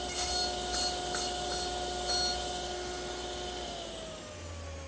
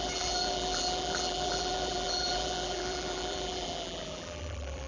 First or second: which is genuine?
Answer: first